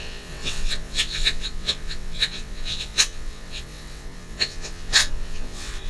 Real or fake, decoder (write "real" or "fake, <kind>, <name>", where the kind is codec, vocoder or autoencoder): fake, vocoder, WaveNeXt